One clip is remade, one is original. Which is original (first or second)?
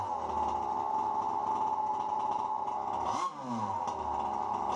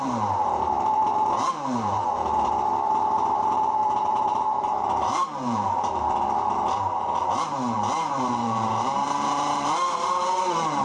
first